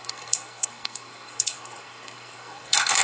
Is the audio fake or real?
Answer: fake